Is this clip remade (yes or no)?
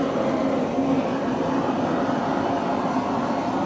no